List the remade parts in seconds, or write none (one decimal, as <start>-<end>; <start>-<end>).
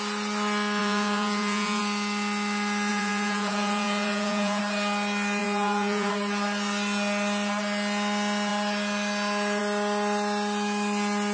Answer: 0.8-1.8; 2.9-4.6; 5.4-6.1